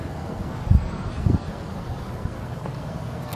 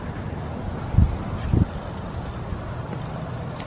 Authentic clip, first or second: second